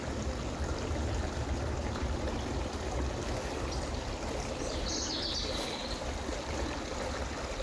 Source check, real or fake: real